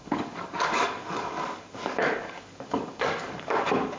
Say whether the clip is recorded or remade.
remade